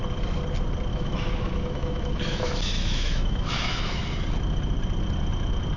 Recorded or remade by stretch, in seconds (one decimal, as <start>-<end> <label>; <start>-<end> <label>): 0.0-0.9 recorded; 0.9-4.0 remade; 4.0-5.8 recorded